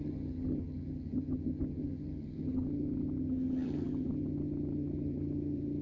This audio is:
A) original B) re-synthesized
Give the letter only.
B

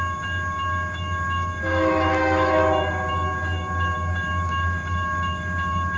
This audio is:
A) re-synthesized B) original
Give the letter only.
A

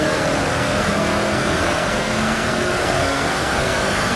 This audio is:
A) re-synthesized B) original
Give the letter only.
A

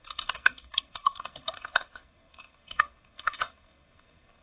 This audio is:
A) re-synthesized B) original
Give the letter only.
A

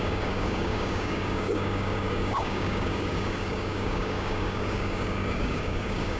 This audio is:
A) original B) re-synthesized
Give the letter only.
B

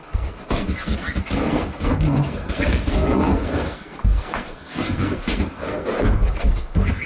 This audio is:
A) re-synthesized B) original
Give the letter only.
A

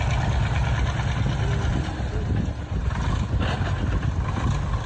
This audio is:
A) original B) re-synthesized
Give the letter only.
A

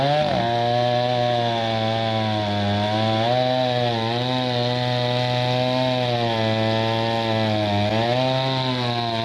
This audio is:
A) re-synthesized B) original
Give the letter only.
B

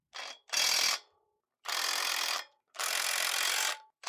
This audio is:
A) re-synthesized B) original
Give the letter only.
B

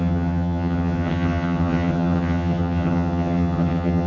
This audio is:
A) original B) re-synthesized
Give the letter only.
B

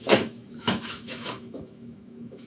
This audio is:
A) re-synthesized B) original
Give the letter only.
A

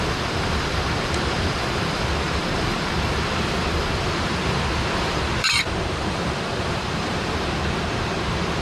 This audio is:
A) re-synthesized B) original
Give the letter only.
A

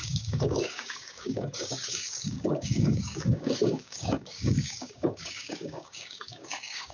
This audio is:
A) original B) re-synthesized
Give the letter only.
B